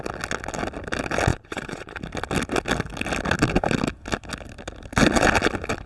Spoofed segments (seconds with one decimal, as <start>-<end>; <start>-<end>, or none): 1.3-2.0